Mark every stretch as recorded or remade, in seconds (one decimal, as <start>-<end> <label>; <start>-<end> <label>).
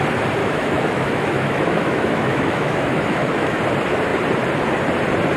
0.0-0.4 recorded; 0.4-3.6 remade; 3.6-5.4 recorded